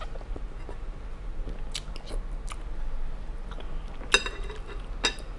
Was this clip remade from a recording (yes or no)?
no